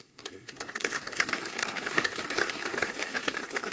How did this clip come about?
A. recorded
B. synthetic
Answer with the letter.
B